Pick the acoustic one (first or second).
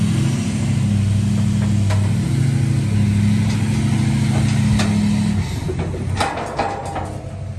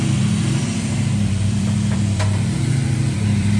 first